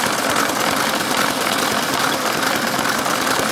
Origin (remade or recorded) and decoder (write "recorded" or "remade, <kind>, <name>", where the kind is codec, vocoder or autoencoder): recorded